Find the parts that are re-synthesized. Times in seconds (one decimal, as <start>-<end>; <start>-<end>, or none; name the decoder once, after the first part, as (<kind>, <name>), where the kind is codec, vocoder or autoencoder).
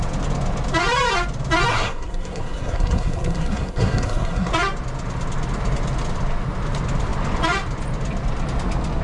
1.7-4.5 (codec, SNAC)